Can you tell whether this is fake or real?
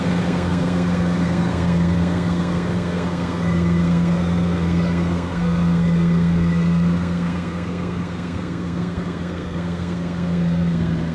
fake